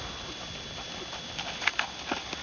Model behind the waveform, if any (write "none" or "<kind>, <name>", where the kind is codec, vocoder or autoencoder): none